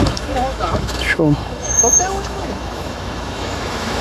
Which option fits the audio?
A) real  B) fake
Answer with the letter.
B